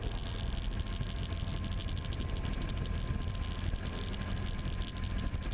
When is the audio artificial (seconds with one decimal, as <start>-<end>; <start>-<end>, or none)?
none